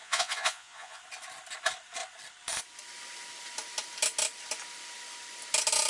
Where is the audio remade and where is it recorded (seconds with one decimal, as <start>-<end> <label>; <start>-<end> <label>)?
0.0-1.0 remade; 1.0-5.9 recorded